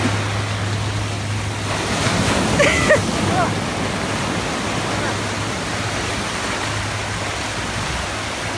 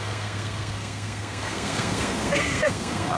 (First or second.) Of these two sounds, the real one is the first